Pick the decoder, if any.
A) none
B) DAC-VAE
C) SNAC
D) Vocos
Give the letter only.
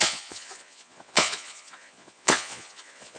D